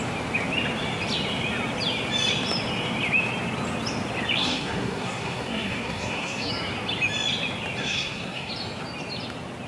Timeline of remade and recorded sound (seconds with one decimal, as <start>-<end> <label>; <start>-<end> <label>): 0.0-4.4 recorded; 4.4-6.5 remade; 6.5-7.8 recorded; 7.8-8.5 remade; 8.5-9.7 recorded